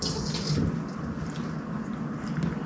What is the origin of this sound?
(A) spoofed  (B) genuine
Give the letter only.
B